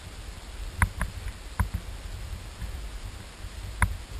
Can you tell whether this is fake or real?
real